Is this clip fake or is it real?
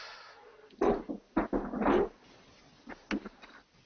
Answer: real